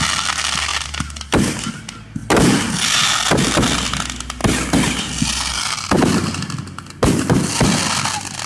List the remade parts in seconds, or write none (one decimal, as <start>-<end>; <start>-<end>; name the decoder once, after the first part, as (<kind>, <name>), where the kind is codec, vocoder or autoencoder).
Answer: none